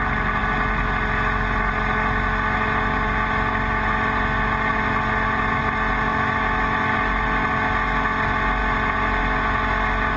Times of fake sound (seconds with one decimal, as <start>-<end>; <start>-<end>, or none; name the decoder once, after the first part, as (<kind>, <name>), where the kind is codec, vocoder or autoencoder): none